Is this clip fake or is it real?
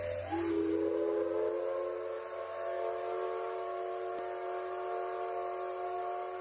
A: real